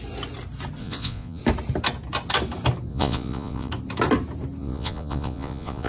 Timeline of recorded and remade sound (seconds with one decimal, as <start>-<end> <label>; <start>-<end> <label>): 0.0-0.8 recorded; 0.8-1.4 remade; 1.4-2.9 recorded; 2.9-3.7 remade; 3.7-4.6 recorded; 4.6-5.9 remade